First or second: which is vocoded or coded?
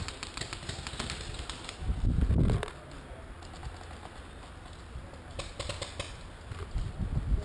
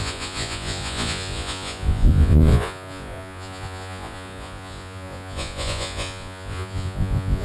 second